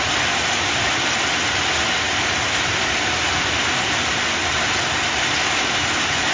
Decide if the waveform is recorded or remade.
recorded